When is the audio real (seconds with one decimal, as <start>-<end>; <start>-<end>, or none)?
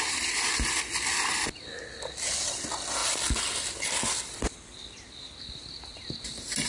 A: 0.0-6.7